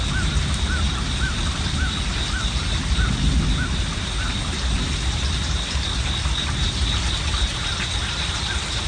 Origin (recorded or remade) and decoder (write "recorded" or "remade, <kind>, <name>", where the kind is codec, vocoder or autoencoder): recorded